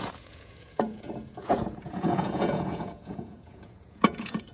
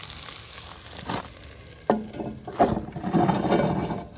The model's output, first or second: first